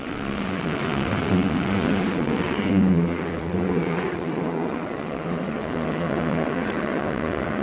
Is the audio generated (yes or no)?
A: yes